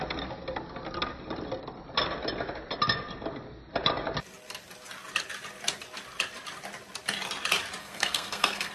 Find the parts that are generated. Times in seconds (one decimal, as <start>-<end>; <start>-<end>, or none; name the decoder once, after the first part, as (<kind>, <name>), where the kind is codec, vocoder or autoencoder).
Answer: 7.8-8.7 (codec, SNAC)